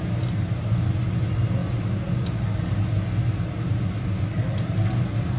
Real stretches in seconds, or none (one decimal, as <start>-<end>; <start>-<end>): 0.0-5.4